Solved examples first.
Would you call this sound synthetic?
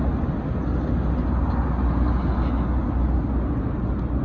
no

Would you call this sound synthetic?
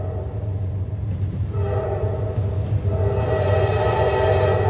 no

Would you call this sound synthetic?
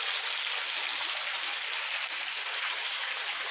no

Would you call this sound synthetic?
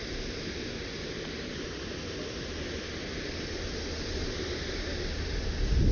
no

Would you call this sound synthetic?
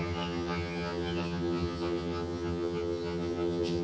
yes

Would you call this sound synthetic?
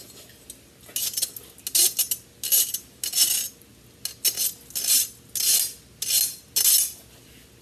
no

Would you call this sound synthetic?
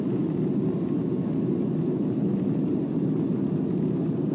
no